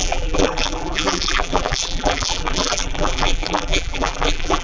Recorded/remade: remade